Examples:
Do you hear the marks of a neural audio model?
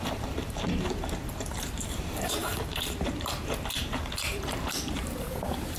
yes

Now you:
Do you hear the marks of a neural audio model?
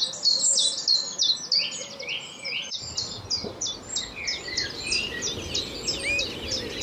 no